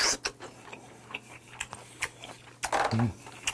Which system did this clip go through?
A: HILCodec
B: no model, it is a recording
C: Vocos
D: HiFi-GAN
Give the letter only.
B